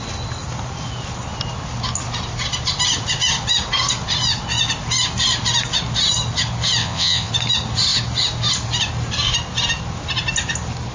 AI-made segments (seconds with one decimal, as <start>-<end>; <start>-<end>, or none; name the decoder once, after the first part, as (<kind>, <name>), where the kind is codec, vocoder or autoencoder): 6.8-7.3 (vocoder, WaveNeXt)